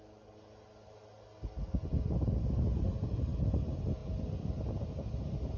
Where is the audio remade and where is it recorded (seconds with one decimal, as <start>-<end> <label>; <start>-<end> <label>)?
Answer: 0.0-5.6 recorded